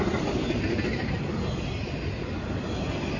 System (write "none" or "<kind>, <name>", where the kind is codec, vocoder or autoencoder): none